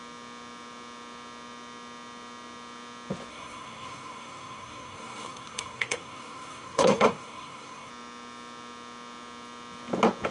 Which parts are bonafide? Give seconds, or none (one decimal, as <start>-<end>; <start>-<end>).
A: 0.0-3.3; 7.9-10.3